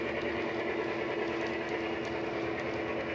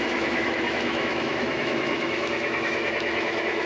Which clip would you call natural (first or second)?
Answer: first